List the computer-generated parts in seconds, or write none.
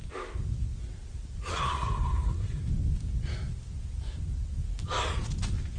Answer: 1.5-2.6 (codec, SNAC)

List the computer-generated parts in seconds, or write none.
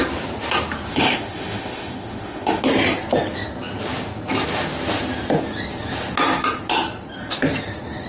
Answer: 0.9-2.6 (autoencoder, DAC-VAE)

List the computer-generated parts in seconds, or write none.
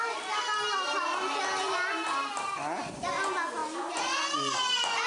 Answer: none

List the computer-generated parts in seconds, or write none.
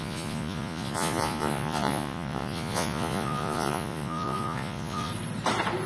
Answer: 0.0-5.1 (vocoder, Vocos)